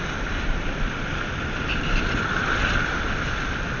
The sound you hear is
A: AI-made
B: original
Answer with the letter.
B